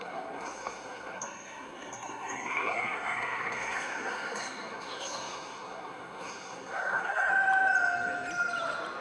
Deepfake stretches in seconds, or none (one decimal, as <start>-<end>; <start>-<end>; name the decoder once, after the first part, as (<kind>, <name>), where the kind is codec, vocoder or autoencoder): 0.0-7.3 (codec, SNAC)